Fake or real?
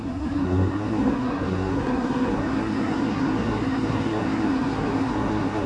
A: fake